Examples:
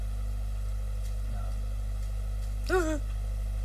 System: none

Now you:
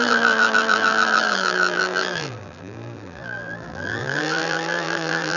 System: vocoder, BigVGAN v2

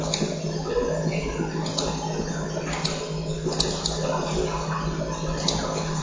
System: none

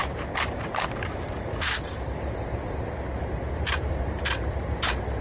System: vocoder, BigVGAN v2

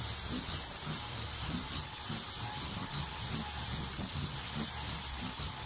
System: none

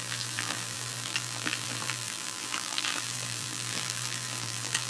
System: vocoder, BigVGAN v2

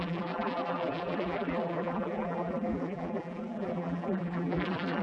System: vocoder, BigVGAN v2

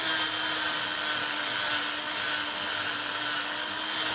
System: none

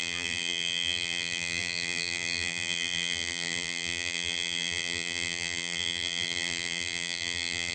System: vocoder, BigVGAN v2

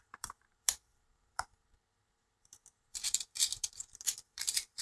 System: vocoder, BigVGAN v2